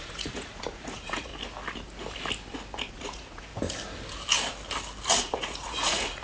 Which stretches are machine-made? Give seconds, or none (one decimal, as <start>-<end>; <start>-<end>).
0.0-1.3; 2.9-3.5; 5.2-6.2